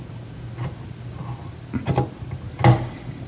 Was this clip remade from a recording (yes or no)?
no